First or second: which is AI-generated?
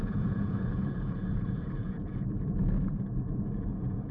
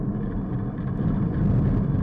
first